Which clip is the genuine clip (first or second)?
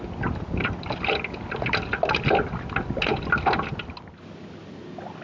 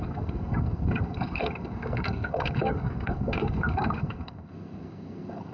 first